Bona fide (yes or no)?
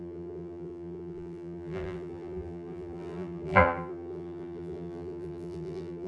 no